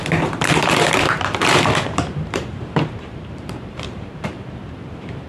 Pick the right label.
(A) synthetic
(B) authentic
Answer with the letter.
A